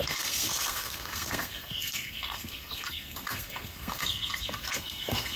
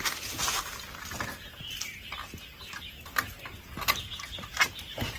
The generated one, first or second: first